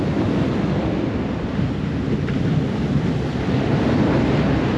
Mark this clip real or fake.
real